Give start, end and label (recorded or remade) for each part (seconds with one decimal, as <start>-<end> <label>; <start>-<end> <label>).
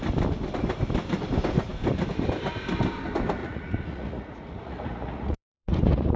0.0-3.4 recorded; 3.4-6.2 remade